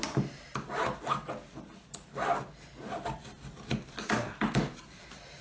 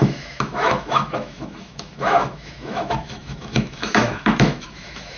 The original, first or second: first